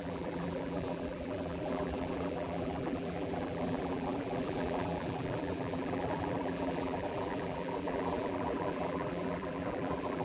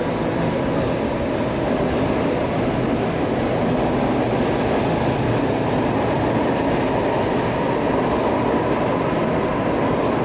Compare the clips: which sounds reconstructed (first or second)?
first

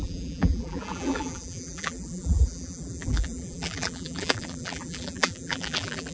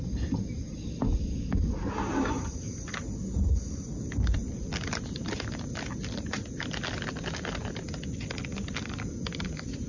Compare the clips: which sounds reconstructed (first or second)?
first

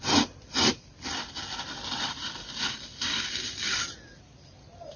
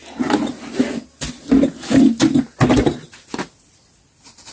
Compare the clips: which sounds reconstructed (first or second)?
first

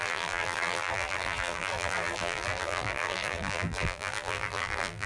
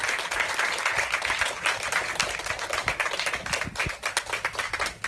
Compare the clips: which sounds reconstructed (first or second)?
first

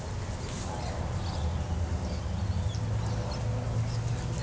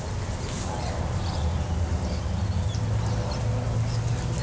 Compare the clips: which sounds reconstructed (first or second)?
second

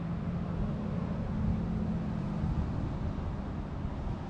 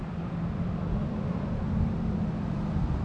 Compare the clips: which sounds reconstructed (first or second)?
second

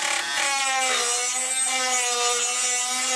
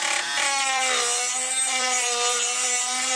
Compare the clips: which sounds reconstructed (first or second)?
second